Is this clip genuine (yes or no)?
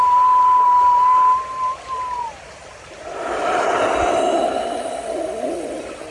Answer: yes